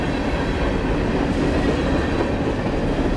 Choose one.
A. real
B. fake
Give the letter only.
A